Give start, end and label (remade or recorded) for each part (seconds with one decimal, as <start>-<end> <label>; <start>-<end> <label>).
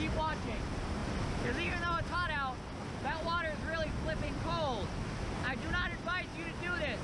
0.0-7.0 recorded